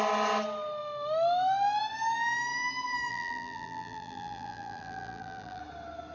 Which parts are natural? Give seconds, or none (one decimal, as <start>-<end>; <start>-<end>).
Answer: 0.0-3.1; 5.6-6.1